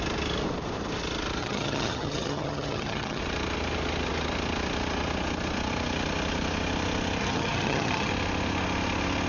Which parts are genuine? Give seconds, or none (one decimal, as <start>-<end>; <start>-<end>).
0.0-1.4; 3.2-7.2; 8.1-9.3